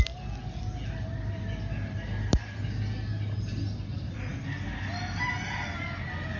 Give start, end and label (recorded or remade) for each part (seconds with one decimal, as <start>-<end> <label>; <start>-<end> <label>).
0.0-6.4 recorded